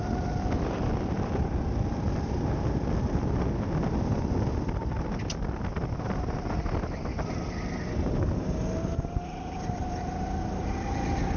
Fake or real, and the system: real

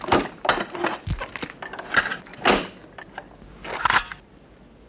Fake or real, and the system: real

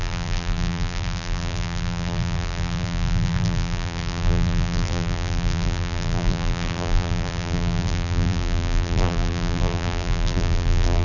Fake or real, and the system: fake, vocoder, BigVGAN v2